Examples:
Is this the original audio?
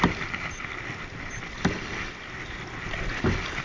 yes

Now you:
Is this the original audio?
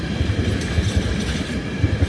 yes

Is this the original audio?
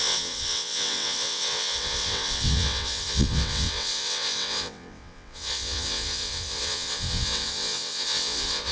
no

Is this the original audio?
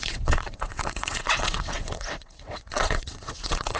no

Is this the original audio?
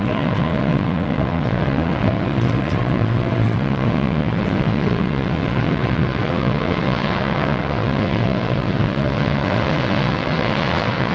no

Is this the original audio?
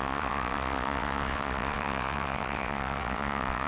no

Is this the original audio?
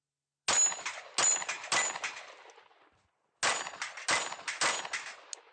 yes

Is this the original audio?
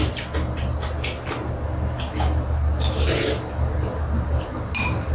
yes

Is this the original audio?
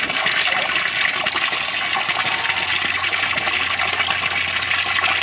yes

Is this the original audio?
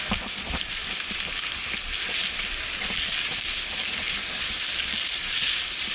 yes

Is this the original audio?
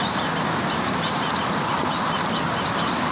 yes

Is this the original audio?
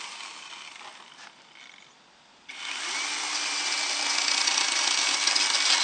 yes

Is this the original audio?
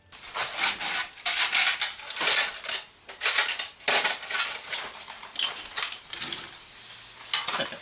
yes